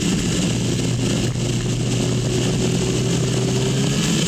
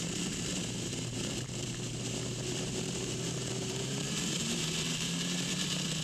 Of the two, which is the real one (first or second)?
first